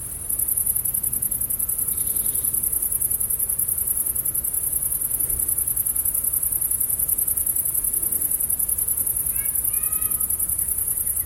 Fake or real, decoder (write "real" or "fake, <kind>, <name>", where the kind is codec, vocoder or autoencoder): real